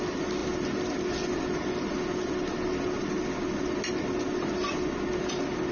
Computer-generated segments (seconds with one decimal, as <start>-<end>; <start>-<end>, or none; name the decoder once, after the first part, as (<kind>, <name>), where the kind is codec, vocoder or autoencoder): none